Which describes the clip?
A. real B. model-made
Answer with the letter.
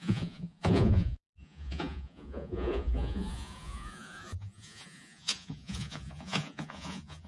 B